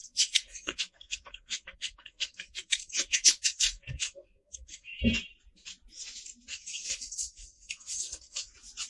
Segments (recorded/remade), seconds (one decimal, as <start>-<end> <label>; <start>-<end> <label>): 0.0-5.0 remade; 5.0-6.5 recorded; 6.5-8.5 remade; 8.5-8.9 recorded